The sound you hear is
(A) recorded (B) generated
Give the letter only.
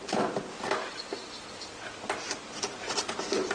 A